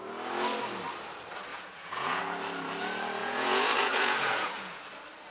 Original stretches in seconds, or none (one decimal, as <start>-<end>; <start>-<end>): 0.0-1.5; 2.2-3.2; 4.8-5.3